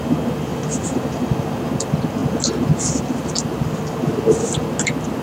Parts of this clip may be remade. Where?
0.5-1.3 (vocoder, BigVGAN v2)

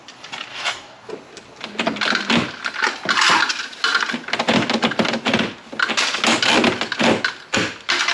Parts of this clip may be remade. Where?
0.5-1.1 (codec, DAC)

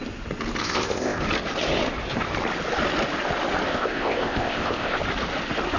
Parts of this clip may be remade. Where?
0.6-1.2 (codec, ZipCodec); 3.7-5.0